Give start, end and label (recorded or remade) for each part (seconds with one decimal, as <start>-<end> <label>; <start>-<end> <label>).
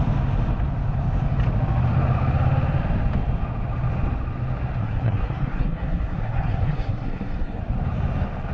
0.0-4.8 recorded; 4.8-7.6 remade; 7.6-8.5 recorded